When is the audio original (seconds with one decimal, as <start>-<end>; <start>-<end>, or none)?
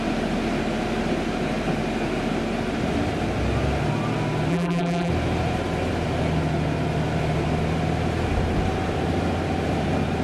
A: 0.0-4.5; 5.1-10.2